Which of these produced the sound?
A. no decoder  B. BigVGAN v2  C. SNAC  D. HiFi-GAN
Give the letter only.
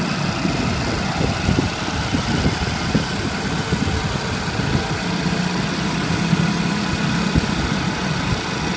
A